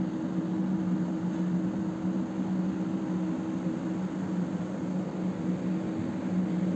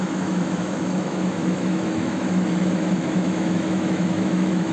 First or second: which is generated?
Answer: second